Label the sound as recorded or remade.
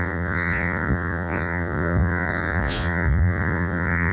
remade